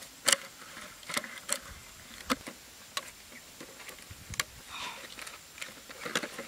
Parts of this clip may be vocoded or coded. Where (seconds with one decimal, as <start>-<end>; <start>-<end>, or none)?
none